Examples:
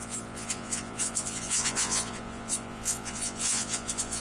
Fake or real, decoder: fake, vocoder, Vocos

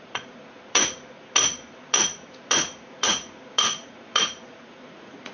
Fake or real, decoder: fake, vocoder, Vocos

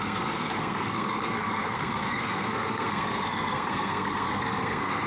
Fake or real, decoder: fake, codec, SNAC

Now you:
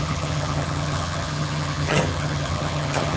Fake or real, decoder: fake, vocoder, HiFi-GAN